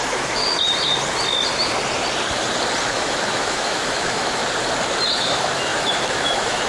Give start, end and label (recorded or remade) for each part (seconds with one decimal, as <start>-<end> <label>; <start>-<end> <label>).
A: 0.0-0.4 remade; 0.4-2.9 recorded; 2.9-4.4 remade; 4.4-5.2 recorded; 5.2-6.7 remade